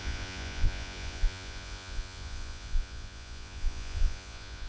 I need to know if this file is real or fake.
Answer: fake